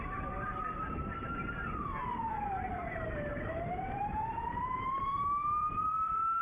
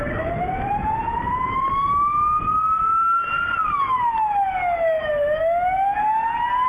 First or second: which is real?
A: second